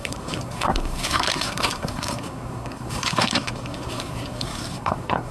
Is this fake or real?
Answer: fake